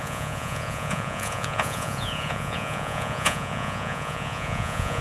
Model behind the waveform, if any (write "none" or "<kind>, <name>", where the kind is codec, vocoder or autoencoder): vocoder, Vocos